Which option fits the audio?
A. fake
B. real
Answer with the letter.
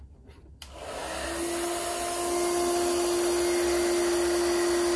B